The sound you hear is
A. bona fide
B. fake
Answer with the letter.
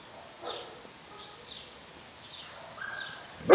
A